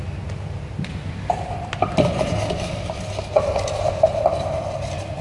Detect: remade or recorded recorded